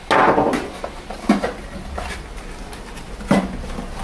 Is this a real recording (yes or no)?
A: yes